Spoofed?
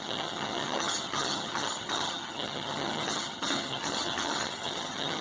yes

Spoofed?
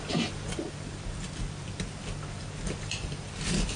yes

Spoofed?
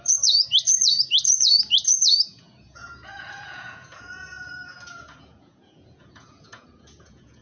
yes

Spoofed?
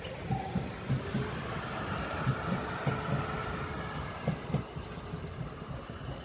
no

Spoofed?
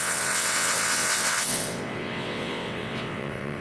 yes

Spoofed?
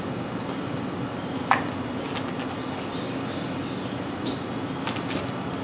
no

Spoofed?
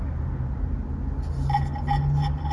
no